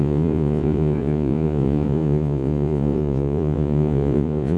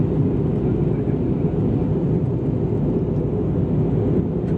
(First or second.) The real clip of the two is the second